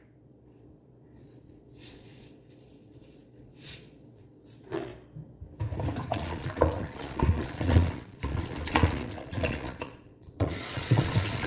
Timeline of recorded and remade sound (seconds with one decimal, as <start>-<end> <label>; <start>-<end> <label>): 0.0-4.9 remade; 4.9-6.1 recorded; 6.1-11.5 remade